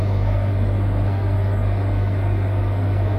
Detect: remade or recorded remade